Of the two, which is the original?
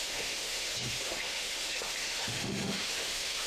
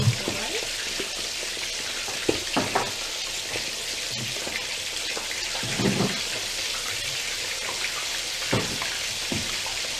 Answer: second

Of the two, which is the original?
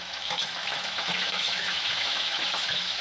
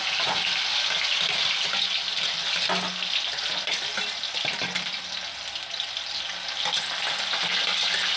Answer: second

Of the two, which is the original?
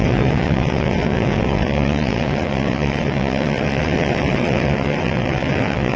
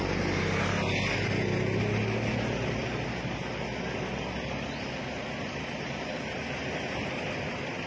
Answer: second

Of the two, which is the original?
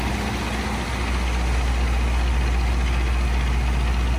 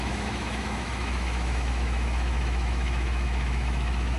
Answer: first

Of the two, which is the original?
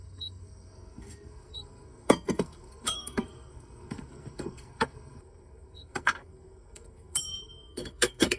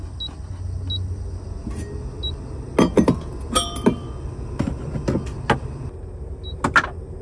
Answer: second